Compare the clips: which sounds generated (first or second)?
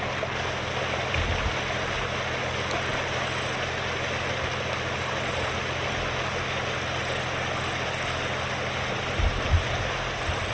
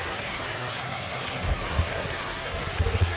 second